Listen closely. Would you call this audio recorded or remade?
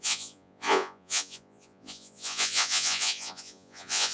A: remade